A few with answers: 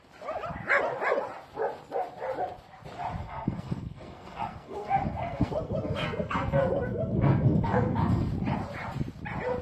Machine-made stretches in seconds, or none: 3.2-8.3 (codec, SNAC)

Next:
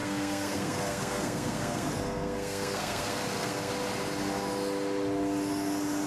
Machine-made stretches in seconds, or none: 0.0-3.7 (codec, SNAC)

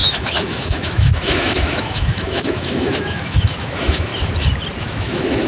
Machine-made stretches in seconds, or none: 0.0-4.1 (autoencoder, DAC-VAE); 4.8-5.5

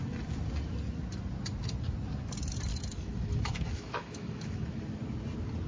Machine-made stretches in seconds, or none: 2.7-4.8 (autoencoder, DAC-VAE)

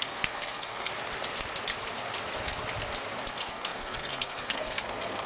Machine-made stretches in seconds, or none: 0.0-0.9 (codec, SNAC); 3.3-5.3

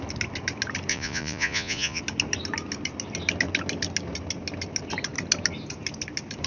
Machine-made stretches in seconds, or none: 0.9-2.0 (vocoder, Vocos)

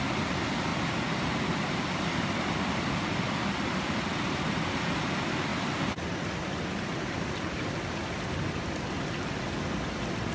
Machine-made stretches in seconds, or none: 0.7-4.5 (vocoder, BigVGAN v2); 5.5-7.7